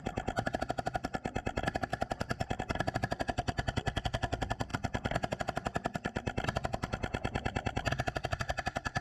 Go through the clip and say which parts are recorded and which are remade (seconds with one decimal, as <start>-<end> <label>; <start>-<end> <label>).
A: 0.0-9.0 recorded